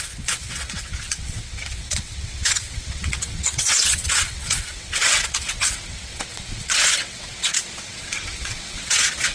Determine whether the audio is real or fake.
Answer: fake